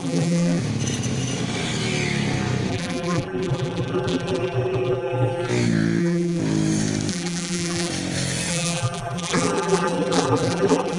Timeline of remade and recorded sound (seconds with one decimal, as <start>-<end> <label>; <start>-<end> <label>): 0.0-0.6 remade; 0.6-2.7 recorded; 2.7-5.5 remade; 5.5-6.0 recorded; 6.0-6.4 remade; 6.4-7.1 recorded; 7.1-7.9 remade; 7.9-8.5 recorded; 8.5-11.0 remade